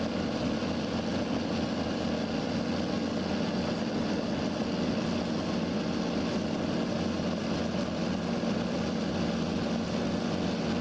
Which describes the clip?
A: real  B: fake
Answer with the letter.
A